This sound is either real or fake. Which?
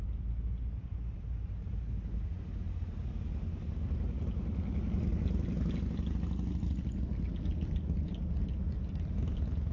real